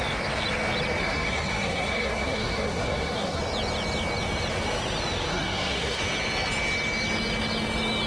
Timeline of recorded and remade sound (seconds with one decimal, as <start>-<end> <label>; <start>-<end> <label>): 0.0-1.0 recorded; 1.0-3.4 remade; 3.4-5.3 recorded; 5.3-6.0 remade; 6.0-8.1 recorded